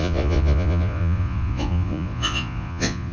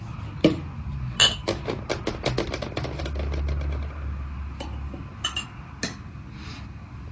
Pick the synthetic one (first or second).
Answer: first